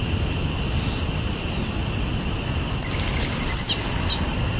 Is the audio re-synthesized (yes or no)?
no